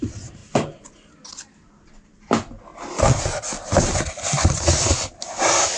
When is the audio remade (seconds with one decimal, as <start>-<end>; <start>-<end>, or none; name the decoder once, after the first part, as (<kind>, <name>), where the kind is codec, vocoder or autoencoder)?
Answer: 2.7-5.8 (vocoder, BigVGAN v2)